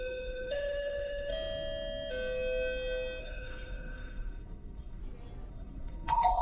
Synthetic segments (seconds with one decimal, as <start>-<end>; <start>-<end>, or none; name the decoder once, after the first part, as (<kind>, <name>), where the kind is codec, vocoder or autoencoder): 0.0-1.3 (codec, HILCodec); 3.2-5.0; 5.5-6.4